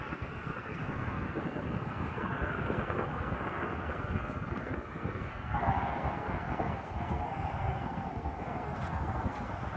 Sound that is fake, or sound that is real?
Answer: fake